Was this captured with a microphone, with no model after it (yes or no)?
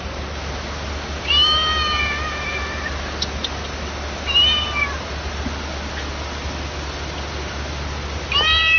yes